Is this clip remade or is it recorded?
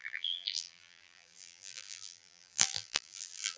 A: remade